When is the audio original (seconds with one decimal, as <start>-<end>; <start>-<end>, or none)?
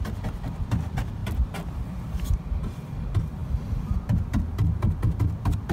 0.0-5.7